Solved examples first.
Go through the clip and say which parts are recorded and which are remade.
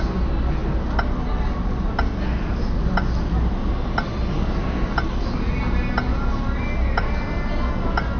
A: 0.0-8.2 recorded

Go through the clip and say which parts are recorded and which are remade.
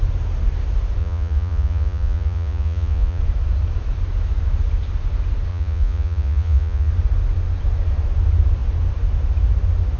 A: 0.0-1.0 recorded; 1.0-3.2 remade; 3.2-5.5 recorded; 5.5-6.9 remade; 6.9-10.0 recorded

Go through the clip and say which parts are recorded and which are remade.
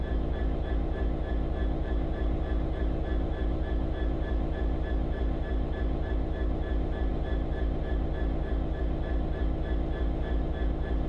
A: 0.0-11.1 recorded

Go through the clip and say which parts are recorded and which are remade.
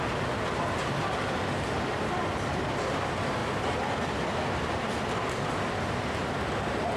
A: 0.0-7.0 recorded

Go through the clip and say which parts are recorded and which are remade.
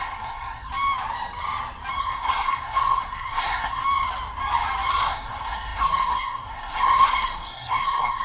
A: 0.0-0.7 remade; 0.7-2.0 recorded; 2.0-3.8 remade; 3.8-5.0 recorded; 5.0-8.2 remade